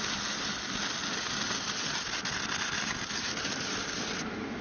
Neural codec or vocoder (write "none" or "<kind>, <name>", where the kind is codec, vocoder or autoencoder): none